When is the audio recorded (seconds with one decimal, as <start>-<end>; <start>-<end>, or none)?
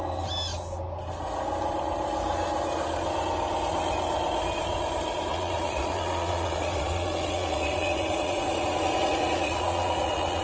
0.0-5.3